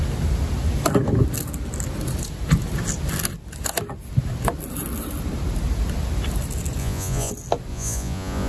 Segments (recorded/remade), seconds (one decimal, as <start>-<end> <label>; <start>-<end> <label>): 0.0-6.8 recorded; 6.8-7.3 remade; 7.3-7.7 recorded; 7.7-8.5 remade